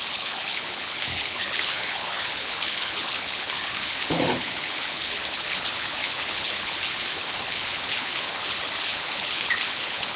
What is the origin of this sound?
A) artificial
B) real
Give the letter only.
A